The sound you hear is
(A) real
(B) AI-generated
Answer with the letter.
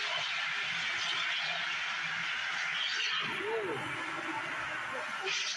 A